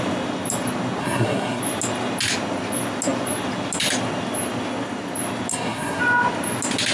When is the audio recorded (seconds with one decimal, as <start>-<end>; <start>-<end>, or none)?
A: 0.0-1.0; 1.6-5.5; 6.0-6.9